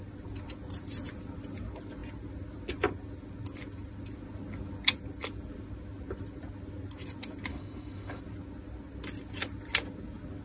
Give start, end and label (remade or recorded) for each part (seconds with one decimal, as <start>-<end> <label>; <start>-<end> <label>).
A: 0.0-7.5 recorded; 7.5-8.2 remade; 8.2-10.4 recorded